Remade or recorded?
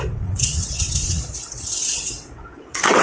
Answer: remade